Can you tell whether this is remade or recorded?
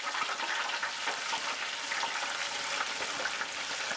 recorded